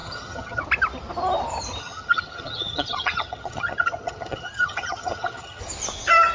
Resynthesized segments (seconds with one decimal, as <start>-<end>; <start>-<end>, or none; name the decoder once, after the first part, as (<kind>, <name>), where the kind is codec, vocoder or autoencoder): 0.0-0.6 (vocoder, HiFi-GAN); 1.8-5.6